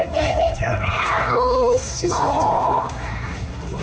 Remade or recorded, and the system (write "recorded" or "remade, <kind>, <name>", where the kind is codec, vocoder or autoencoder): remade, codec, SNAC